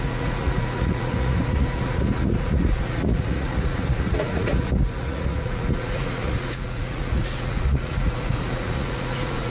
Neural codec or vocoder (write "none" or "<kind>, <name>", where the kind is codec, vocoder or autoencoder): vocoder, Vocos